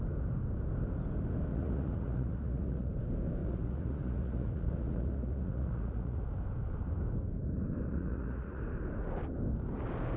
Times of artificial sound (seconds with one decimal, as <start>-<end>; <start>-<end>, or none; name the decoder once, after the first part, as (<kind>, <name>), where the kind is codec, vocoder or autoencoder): 1.5-2.9 (vocoder, Vocos); 3.4-6.2; 7.9-8.6

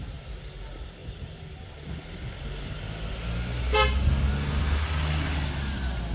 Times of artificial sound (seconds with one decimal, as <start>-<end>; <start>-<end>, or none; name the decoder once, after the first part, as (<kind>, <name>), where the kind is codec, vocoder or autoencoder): none

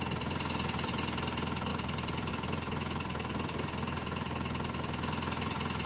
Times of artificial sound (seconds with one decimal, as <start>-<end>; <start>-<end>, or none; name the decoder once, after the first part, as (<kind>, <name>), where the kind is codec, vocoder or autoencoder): 1.7-2.3 (vocoder, BigVGAN v2)